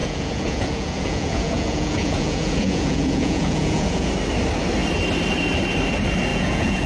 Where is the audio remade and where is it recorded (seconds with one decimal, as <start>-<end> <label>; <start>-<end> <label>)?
0.0-4.1 remade; 4.1-6.3 recorded; 6.3-6.9 remade